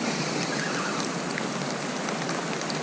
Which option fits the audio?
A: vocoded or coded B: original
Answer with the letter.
B